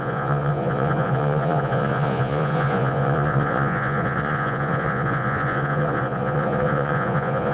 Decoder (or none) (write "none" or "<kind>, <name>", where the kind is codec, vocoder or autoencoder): vocoder, Vocos